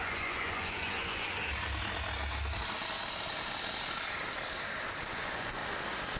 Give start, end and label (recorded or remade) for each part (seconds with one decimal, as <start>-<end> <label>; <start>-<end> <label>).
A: 0.0-1.4 remade; 1.4-5.1 recorded; 5.1-5.6 remade; 5.6-6.2 recorded